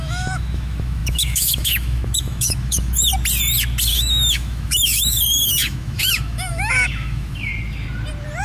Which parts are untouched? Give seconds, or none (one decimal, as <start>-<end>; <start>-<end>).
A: 3.1-3.9; 7.5-8.4